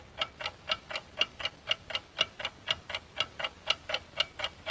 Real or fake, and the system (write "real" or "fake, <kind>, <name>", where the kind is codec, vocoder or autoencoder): real